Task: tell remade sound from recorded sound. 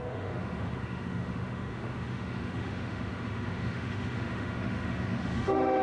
remade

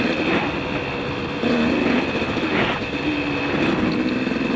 recorded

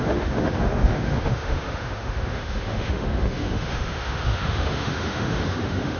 remade